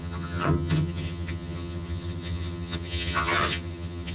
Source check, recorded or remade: remade